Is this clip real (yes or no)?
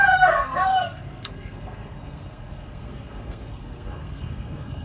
no